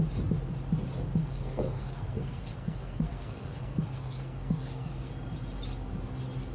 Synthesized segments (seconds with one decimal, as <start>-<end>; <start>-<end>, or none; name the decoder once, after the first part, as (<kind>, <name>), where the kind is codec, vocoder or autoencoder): 1.2-5.1 (codec, SNAC)